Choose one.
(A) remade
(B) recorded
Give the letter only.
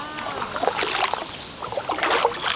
B